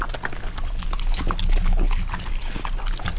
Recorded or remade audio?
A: recorded